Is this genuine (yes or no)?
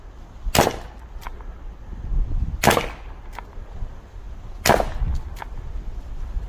yes